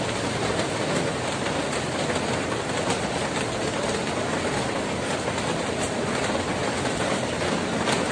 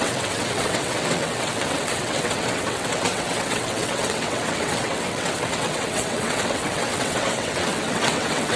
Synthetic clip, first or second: second